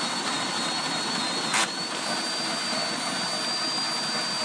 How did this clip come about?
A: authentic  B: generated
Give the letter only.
A